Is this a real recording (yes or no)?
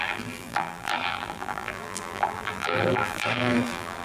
no